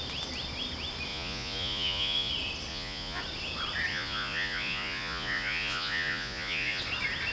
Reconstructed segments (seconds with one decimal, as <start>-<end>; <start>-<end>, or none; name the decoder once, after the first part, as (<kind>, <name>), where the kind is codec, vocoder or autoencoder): 1.1-2.3 (vocoder, Vocos); 2.7-3.2; 3.9-6.8